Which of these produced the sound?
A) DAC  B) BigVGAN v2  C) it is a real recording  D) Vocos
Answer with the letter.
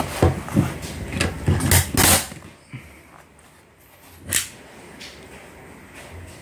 C